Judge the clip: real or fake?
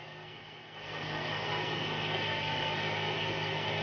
fake